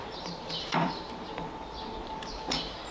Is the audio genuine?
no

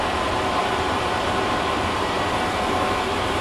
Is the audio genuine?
yes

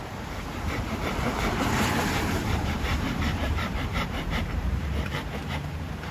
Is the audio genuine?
no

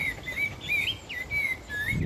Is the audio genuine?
yes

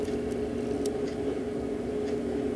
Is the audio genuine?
yes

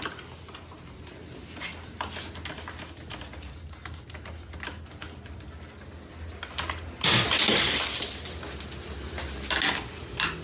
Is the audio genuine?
yes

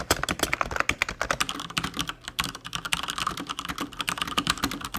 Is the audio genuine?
yes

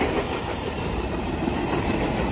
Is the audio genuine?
no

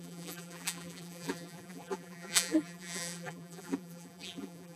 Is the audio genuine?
no